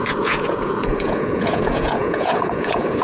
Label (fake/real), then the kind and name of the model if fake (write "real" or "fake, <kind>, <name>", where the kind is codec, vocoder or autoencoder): fake, vocoder, Vocos